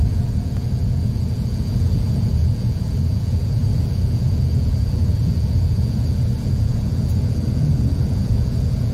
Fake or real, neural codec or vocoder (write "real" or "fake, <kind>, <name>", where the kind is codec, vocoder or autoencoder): fake, vocoder, Vocos